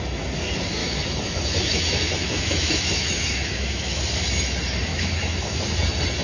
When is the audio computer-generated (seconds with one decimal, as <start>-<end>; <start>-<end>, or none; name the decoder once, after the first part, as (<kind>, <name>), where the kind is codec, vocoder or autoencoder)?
0.8-4.0 (autoencoder, DAC-VAE); 4.9-5.6